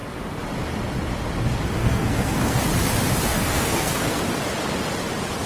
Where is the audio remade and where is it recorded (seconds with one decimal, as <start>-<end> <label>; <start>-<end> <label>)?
0.0-1.8 recorded; 1.8-2.6 remade; 2.6-3.3 recorded; 3.3-4.2 remade; 4.2-5.5 recorded

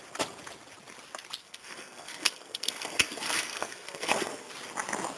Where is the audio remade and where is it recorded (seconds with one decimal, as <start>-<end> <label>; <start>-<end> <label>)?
0.0-1.4 recorded; 1.4-4.5 remade; 4.5-5.2 recorded